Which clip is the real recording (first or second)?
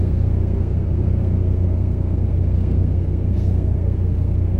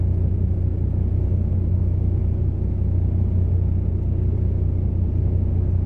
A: second